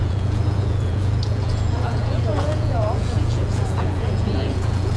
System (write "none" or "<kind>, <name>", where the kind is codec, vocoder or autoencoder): vocoder, Vocos